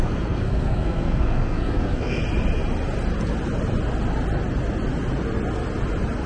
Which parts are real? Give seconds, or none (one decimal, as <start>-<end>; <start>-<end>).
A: 2.2-6.3